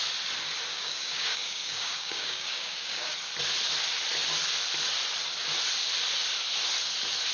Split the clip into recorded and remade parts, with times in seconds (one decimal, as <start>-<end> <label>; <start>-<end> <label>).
0.0-0.7 recorded; 0.7-3.1 remade; 3.1-7.3 recorded